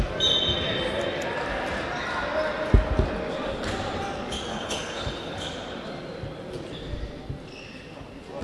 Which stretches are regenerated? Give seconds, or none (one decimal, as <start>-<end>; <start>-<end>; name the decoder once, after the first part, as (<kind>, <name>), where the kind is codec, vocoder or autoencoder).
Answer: 4.5-5.4 (codec, HILCodec)